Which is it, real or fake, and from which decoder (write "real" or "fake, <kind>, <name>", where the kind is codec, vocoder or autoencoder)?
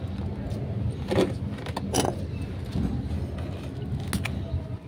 real